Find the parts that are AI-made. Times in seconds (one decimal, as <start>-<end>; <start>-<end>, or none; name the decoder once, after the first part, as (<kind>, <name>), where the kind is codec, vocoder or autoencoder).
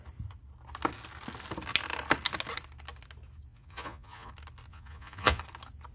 3.5-4.3 (vocoder, Vocos); 4.7-5.4